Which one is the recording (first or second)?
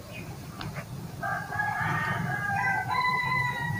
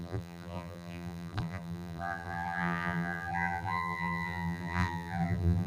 first